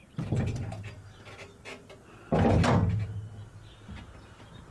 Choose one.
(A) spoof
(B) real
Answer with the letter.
B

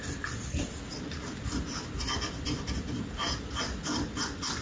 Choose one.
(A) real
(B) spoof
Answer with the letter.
B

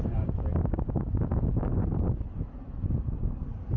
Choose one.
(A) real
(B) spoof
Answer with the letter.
B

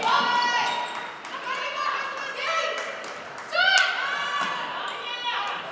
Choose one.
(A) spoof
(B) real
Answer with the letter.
B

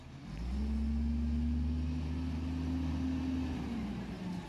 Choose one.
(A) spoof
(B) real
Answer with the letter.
B